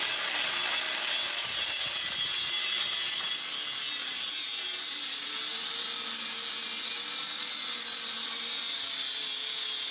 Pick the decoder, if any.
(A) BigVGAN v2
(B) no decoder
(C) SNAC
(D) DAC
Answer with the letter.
B